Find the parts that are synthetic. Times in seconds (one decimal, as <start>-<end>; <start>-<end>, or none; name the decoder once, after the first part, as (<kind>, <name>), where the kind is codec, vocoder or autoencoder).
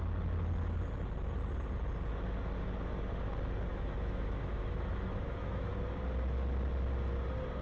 3.7-5.7 (autoencoder, DAC-VAE)